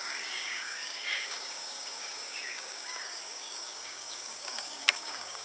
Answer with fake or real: fake